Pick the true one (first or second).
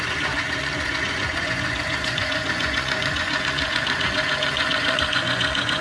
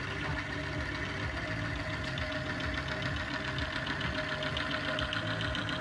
second